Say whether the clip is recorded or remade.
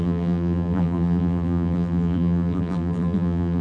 remade